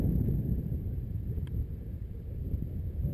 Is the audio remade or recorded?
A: remade